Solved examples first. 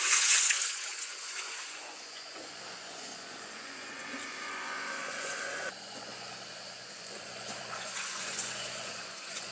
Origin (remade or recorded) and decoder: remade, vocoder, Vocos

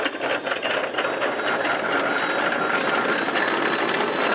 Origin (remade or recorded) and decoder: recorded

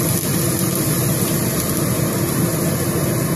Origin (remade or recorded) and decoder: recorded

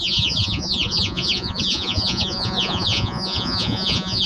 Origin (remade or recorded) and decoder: remade, vocoder, Vocos